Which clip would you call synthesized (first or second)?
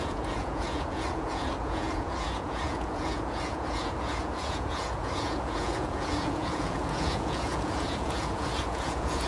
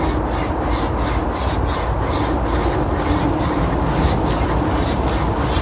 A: first